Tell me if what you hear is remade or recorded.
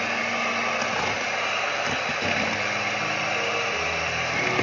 recorded